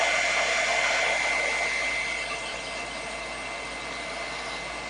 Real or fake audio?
real